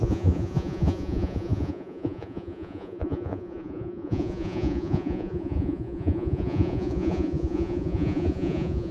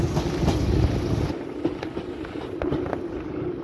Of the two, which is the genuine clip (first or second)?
second